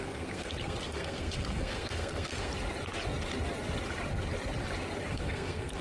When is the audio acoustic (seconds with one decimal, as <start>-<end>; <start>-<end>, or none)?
2.5-5.1